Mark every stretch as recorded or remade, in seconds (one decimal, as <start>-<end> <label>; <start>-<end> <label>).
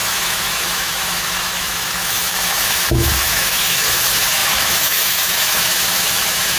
0.0-6.6 remade